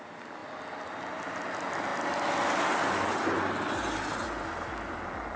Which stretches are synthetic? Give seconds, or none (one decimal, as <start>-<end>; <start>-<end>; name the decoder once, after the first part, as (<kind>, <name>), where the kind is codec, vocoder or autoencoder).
none